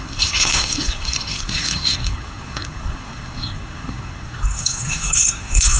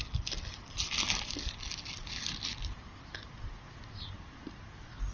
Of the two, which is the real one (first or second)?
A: second